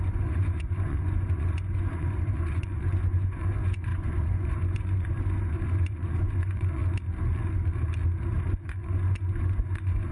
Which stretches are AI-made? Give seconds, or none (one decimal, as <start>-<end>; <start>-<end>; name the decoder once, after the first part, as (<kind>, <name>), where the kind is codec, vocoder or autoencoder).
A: 0.0-6.8 (vocoder, Vocos); 8.4-10.1